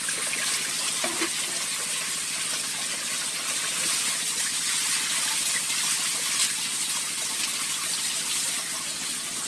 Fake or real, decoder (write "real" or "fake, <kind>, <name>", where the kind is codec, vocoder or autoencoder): real